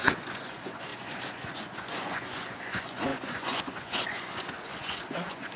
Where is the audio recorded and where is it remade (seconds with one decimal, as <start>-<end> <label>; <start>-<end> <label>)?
0.0-5.6 remade